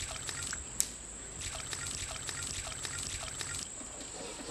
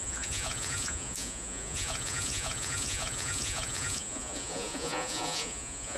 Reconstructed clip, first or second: second